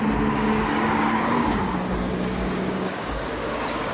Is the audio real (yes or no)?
no